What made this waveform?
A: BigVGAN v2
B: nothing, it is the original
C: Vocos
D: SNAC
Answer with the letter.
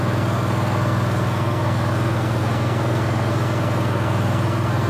D